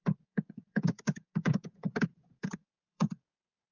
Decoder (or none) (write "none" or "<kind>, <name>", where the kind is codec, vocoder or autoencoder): vocoder, Vocos